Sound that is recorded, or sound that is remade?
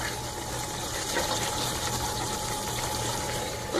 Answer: remade